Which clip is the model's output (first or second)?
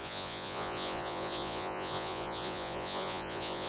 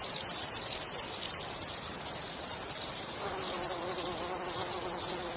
first